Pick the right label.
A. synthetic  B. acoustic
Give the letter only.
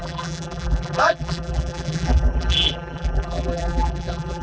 A